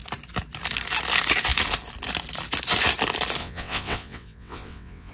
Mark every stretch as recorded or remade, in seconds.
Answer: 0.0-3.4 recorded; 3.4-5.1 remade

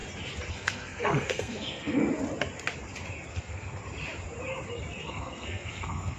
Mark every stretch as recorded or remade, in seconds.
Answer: 0.0-0.5 recorded; 0.5-2.0 remade; 2.0-3.3 recorded; 3.3-3.8 remade; 3.8-5.0 recorded; 5.0-6.2 remade

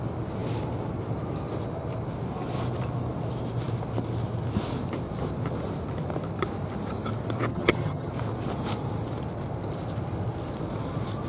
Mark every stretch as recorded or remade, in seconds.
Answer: 0.0-7.5 recorded; 7.5-8.1 remade; 8.1-11.3 recorded

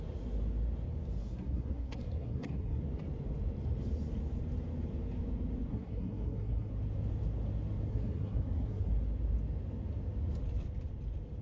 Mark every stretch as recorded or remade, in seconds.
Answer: 0.0-1.2 recorded; 1.2-2.8 remade; 2.8-5.7 recorded; 5.7-6.7 remade; 6.7-7.9 recorded; 7.9-8.9 remade; 8.9-11.4 recorded

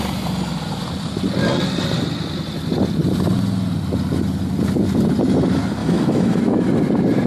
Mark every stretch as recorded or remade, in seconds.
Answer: 0.0-5.8 recorded; 5.8-6.4 remade; 6.4-7.3 recorded

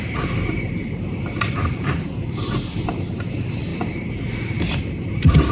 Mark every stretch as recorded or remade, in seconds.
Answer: 0.0-3.7 remade; 3.7-5.1 recorded; 5.1-5.5 remade

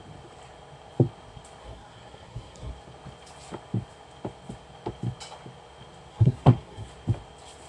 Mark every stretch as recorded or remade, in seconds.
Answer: 0.0-1.6 recorded; 1.6-2.7 remade; 2.7-6.1 recorded; 6.1-6.9 remade; 6.9-7.7 recorded